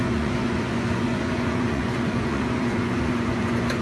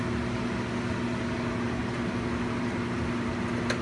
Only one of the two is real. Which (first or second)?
second